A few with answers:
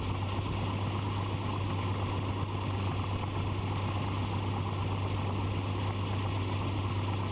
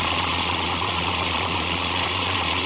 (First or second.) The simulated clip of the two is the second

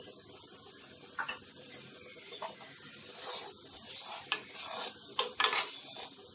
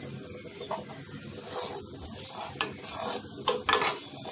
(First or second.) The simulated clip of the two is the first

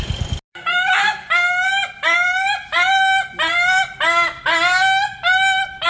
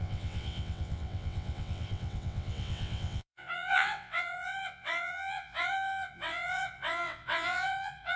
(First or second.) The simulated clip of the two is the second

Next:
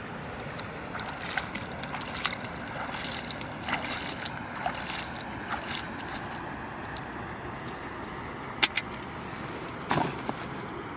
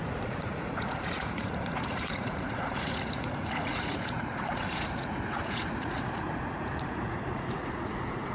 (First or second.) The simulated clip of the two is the second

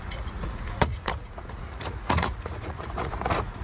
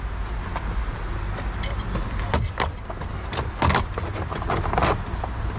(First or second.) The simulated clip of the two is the first